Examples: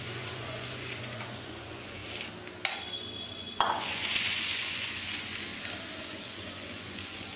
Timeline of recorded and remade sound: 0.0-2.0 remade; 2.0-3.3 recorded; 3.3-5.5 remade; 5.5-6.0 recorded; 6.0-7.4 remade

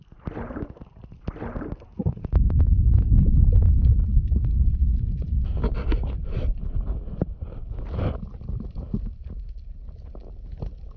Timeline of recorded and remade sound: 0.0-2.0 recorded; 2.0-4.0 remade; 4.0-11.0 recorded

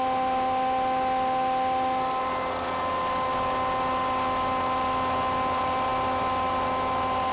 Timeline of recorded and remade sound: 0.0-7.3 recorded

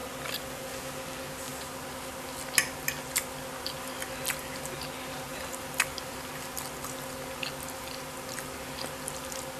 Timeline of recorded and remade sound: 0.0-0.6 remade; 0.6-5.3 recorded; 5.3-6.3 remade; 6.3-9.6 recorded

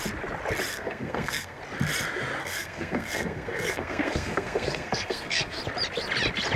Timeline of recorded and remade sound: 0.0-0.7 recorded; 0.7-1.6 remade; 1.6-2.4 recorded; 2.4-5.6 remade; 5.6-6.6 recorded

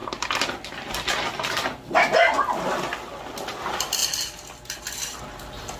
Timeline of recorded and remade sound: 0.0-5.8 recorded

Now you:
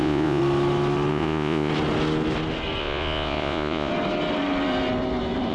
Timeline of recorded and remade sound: 0.0-0.4 remade; 0.4-1.1 recorded; 1.1-1.7 remade; 1.7-2.8 recorded; 2.8-3.9 remade; 3.9-5.5 recorded